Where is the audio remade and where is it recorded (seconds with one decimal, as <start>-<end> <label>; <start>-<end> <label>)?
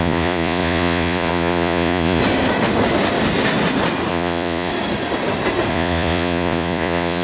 0.0-2.2 remade; 2.2-4.1 recorded; 4.1-4.7 remade; 4.7-5.7 recorded; 5.7-7.2 remade